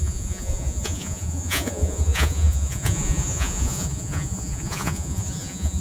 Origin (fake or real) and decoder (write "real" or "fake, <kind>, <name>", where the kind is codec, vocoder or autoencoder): fake, vocoder, Vocos